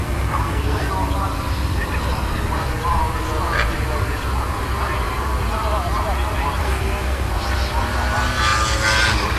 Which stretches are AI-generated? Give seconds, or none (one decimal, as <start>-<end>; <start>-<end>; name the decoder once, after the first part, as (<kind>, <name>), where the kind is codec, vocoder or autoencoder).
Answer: 0.0-0.9 (codec, SNAC); 6.6-7.3